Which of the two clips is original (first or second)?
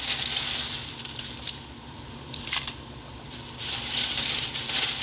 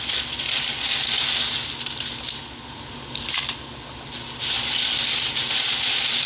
second